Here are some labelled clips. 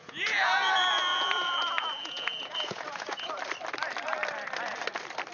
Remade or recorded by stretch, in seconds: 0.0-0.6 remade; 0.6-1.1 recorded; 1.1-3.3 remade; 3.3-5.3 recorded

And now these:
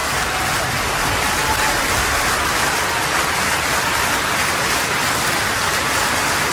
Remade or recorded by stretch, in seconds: 0.0-3.9 remade; 3.9-6.5 recorded

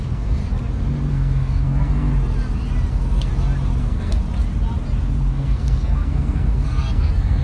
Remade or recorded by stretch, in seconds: 0.0-0.4 remade; 0.4-1.1 recorded; 1.1-2.1 remade; 2.1-2.9 recorded; 2.9-3.3 remade; 3.3-3.8 recorded; 3.8-4.2 remade; 4.2-5.3 recorded; 5.3-7.4 remade

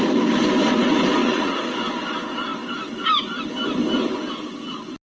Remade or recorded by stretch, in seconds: 0.0-1.2 recorded; 1.2-1.7 remade; 1.7-5.2 recorded

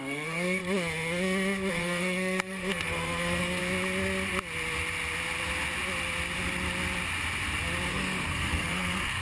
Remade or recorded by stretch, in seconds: 0.0-0.6 remade; 0.6-1.7 recorded; 1.7-3.6 remade; 3.6-7.9 recorded; 7.9-9.2 remade

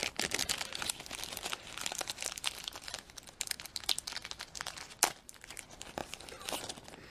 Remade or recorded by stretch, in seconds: 0.0-7.1 recorded